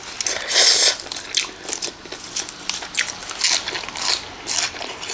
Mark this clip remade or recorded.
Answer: recorded